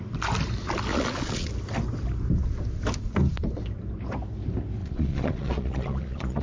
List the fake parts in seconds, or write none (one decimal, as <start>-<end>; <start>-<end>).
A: 0.9-1.5; 4.8-6.4